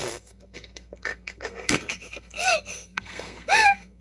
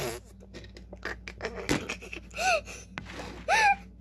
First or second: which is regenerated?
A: first